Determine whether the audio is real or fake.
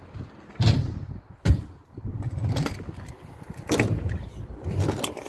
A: real